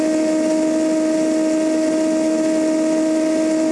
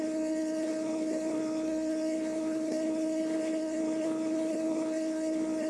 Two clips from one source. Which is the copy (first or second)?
second